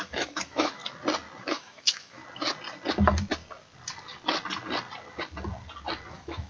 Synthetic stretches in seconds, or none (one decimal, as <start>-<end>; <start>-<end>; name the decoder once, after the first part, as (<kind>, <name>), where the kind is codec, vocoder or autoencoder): 0.0-0.8 (autoencoder, DAC-VAE); 1.4-2.2; 6.1-6.5